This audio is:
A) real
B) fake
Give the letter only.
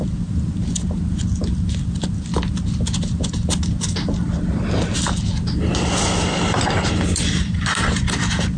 A